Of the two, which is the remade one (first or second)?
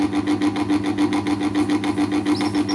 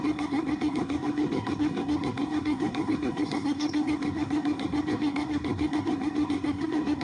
second